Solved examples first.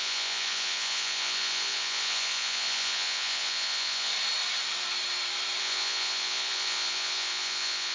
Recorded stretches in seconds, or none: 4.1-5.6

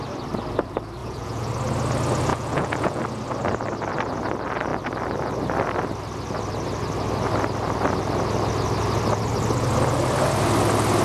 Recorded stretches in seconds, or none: 0.0-1.0; 1.5-2.3; 3.0-11.0

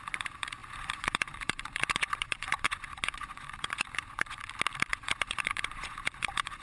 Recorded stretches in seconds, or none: 4.4-4.9

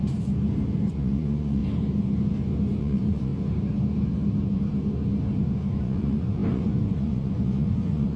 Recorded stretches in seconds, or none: 0.0-0.9; 1.6-2.8; 3.3-5.8

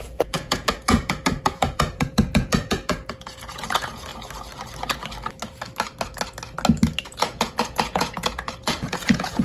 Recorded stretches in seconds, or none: 4.1-7.0